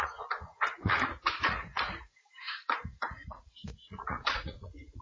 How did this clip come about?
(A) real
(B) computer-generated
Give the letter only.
B